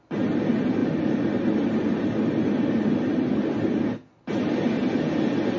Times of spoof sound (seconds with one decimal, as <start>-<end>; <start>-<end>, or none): none